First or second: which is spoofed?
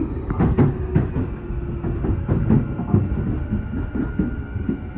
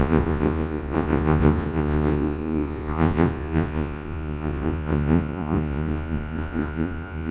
second